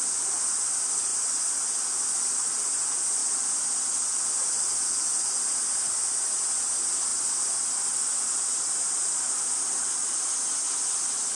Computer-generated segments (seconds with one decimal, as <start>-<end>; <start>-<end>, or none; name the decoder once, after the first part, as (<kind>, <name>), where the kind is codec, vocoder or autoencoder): none